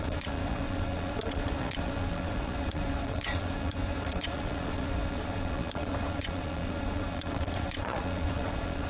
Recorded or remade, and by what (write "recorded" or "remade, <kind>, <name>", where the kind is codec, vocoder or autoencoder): remade, vocoder, Vocos